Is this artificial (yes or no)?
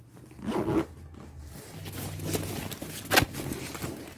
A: no